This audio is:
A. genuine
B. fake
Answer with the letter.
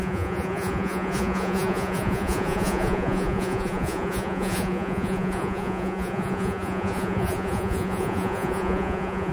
B